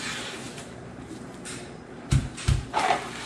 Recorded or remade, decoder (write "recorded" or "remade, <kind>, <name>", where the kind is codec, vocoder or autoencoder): remade, vocoder, BigVGAN v2